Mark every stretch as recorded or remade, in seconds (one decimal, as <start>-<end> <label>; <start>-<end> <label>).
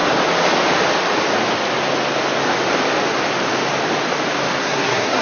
0.0-4.6 recorded; 4.6-5.2 remade